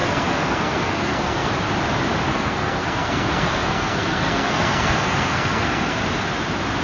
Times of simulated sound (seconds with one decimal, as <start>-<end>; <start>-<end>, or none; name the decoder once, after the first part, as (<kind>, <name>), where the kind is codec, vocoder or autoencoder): 0.0-1.5 (codec, SNAC); 2.3-6.0